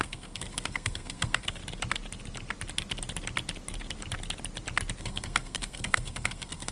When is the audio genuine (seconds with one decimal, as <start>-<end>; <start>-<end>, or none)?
1.6-5.0